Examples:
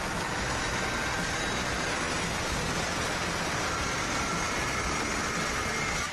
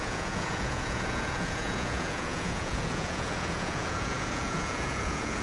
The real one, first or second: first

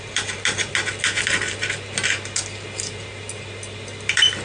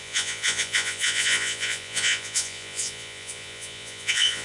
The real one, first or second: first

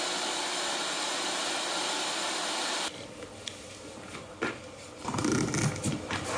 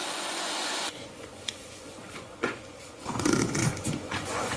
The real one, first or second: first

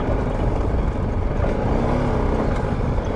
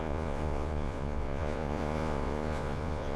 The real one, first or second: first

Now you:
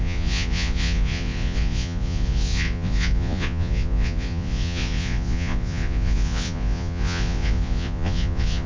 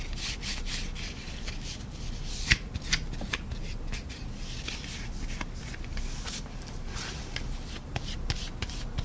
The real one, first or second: second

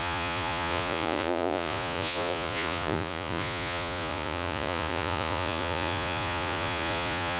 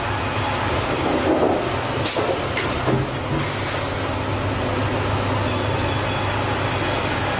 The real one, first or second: second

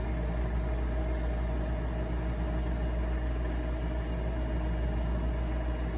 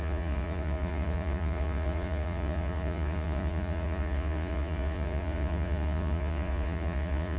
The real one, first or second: first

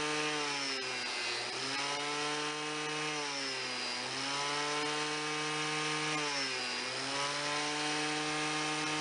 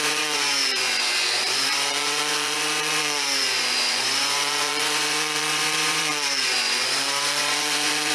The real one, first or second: first